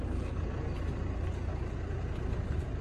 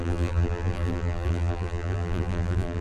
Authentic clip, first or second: first